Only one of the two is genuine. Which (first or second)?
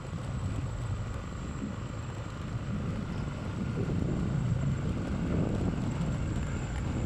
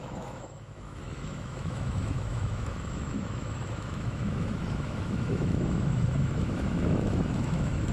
first